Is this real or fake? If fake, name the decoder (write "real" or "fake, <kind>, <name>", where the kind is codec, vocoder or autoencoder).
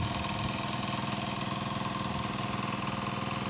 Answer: real